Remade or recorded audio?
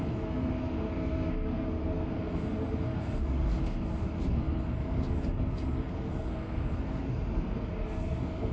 remade